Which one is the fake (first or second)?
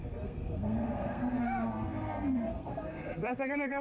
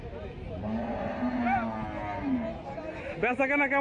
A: first